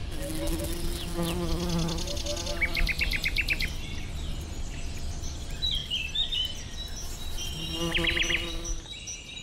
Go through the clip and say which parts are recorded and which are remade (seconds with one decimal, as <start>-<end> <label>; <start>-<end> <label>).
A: 0.0-5.8 recorded; 5.8-6.6 remade; 6.6-9.4 recorded